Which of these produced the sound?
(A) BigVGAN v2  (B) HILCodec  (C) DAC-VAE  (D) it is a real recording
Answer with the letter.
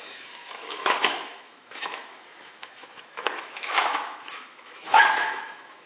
C